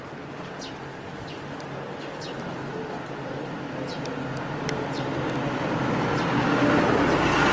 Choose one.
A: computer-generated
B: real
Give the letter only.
B